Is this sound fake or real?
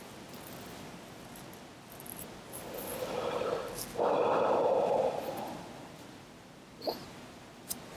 real